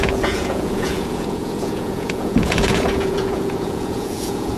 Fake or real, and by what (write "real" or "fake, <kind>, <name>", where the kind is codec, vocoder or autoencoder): fake, vocoder, Vocos